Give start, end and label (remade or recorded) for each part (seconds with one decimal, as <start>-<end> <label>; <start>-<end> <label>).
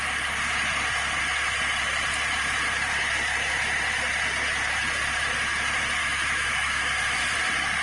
0.0-6.0 recorded; 6.0-7.2 remade; 7.2-7.8 recorded